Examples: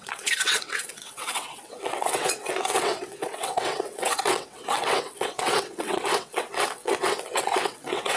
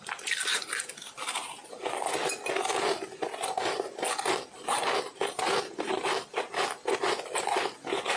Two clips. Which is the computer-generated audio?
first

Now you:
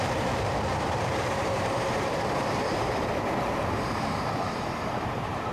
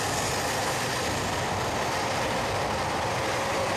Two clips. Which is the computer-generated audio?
first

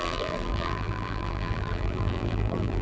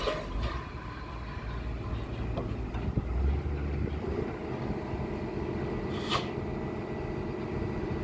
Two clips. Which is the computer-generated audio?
first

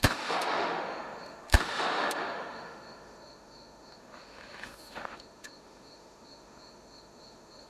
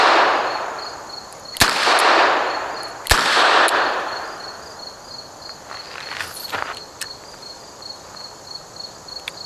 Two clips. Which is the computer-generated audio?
first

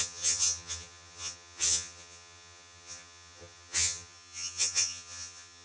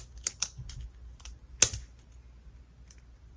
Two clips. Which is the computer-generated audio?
first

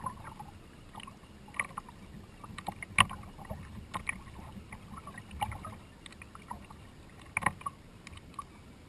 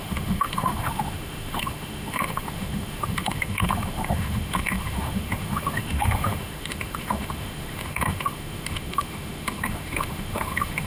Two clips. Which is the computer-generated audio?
second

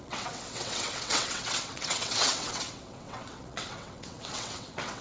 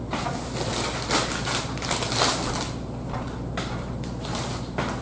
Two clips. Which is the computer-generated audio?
first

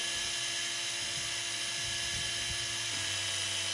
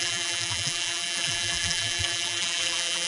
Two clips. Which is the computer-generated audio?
second